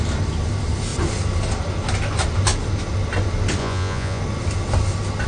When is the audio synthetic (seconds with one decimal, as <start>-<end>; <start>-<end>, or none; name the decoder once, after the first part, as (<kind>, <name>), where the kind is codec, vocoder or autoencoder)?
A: 3.6-4.2 (vocoder, Vocos)